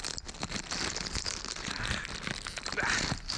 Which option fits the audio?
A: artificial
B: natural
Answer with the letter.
B